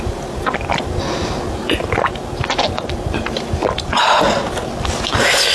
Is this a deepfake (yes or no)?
no